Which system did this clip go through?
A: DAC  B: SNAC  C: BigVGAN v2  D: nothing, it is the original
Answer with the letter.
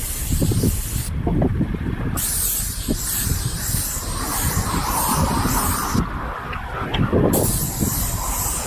D